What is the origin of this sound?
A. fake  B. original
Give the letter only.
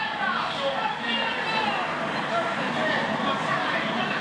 B